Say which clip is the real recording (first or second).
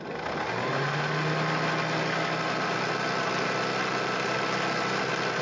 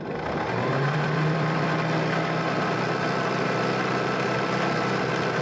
first